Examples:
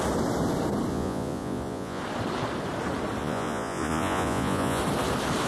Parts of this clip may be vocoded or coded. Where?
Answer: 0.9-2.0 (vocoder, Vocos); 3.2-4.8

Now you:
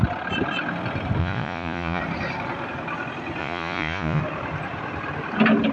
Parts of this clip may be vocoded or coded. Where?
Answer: 1.2-2.0 (vocoder, Vocos); 3.4-4.2

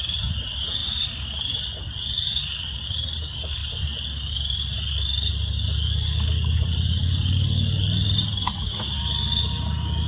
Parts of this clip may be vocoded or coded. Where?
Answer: none